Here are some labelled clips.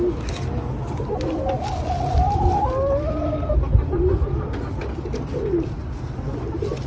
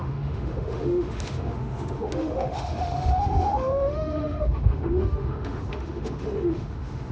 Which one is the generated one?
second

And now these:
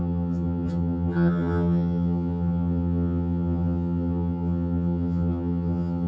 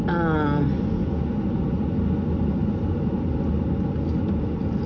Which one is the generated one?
first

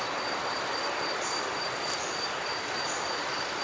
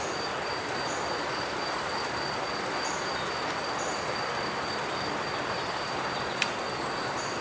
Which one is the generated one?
first